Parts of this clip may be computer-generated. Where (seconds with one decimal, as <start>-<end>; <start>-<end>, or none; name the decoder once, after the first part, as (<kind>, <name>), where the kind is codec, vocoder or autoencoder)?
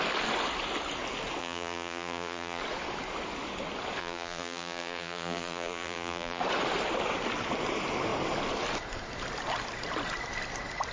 1.4-2.6 (vocoder, BigVGAN v2); 4.0-6.4